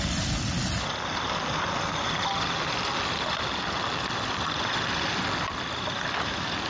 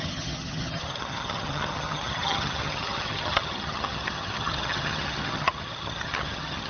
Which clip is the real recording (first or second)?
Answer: first